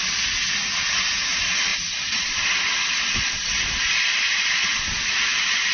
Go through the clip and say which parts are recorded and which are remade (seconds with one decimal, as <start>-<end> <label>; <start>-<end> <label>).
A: 0.0-5.7 recorded